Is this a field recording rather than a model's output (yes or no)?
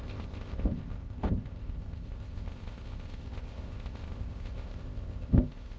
no